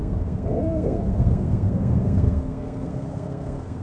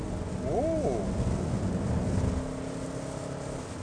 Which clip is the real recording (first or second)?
second